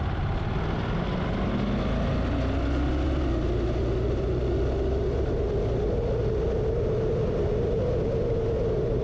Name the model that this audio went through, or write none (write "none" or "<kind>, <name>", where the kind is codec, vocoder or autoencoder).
none